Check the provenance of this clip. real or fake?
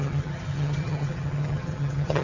fake